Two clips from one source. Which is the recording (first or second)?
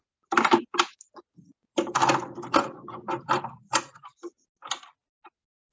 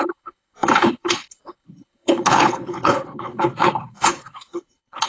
first